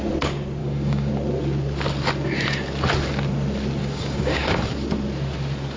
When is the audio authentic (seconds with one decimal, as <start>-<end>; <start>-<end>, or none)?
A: 0.0-0.6; 1.1-3.8; 4.6-5.8